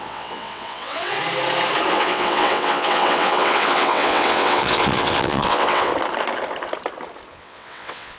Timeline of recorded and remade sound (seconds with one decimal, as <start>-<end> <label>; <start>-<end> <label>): 0.0-1.2 remade; 1.2-1.9 recorded; 1.9-5.9 remade; 5.9-7.3 recorded; 7.3-8.2 remade